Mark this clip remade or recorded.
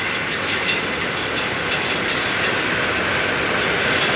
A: recorded